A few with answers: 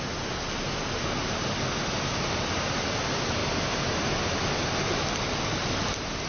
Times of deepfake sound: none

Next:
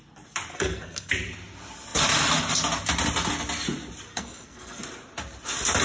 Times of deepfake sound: 0.5-1.1 (codec, SNAC); 4.1-4.8

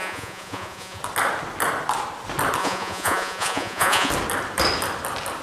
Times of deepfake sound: 0.0-1.0 (vocoder, Vocos); 2.6-4.1

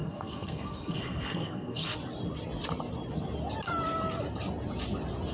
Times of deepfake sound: 0.0-1.9 (codec, SNAC)

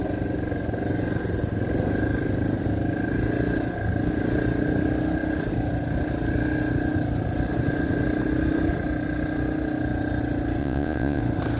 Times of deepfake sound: 10.6-11.2 (vocoder, Vocos)

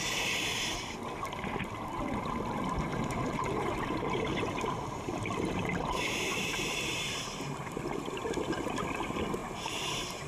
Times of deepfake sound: 2.9-7.8 (vocoder, BigVGAN v2); 8.2-8.8

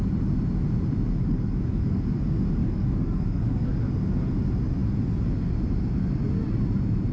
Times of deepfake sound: 1.2-2.2 (codec, DAC); 2.6-3.7

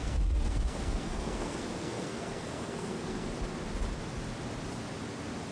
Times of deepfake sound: 0.0-3.3 (codec, SNAC)